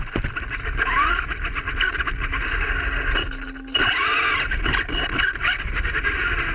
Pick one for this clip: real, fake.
real